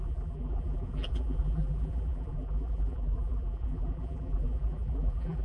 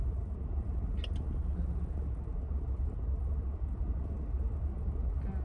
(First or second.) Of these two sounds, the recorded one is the second